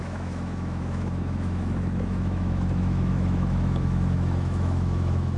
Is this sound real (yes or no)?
no